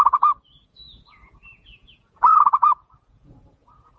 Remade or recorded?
remade